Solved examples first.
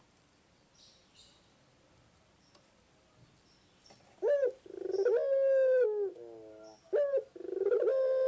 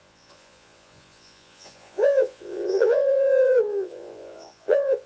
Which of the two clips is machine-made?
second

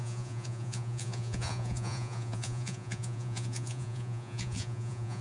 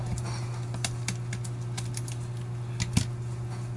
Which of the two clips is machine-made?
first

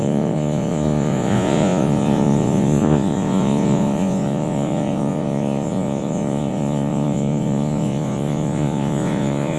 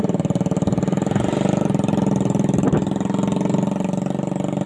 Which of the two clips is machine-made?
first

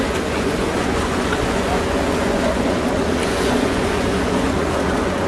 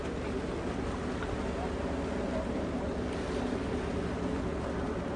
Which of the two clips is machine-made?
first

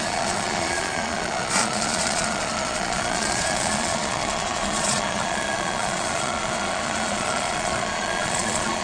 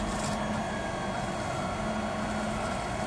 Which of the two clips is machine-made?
first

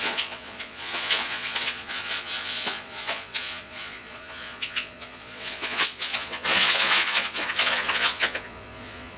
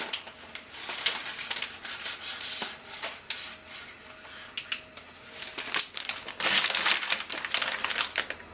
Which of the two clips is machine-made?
first